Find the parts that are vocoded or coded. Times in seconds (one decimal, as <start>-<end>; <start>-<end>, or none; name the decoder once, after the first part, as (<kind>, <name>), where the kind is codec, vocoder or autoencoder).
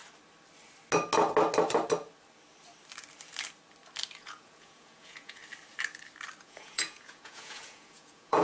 4.2-5.4 (vocoder, Vocos); 6.4-8.4